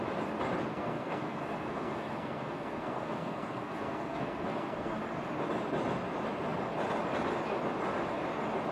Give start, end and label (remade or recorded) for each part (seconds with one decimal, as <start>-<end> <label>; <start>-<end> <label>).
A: 0.0-0.7 recorded; 0.7-5.0 remade; 5.0-8.7 recorded